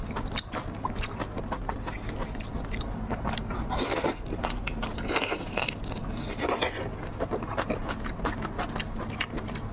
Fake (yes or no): no